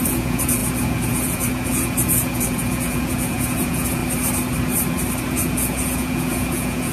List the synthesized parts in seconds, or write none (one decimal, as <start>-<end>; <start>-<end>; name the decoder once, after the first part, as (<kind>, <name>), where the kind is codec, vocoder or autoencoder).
0.0-4.0 (vocoder, Vocos); 5.2-6.9